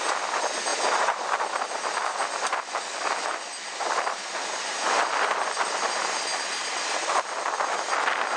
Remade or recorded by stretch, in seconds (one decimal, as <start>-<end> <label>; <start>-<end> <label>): 0.0-8.4 recorded